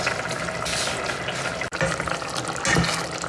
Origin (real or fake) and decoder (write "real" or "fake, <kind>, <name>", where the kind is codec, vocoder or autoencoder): real